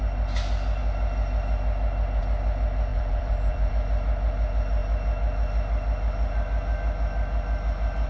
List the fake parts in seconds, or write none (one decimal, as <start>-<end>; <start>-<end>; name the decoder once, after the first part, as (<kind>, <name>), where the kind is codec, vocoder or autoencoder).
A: 2.9-3.7 (vocoder, BigVGAN v2)